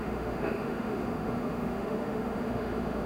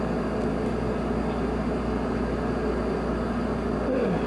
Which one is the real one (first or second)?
second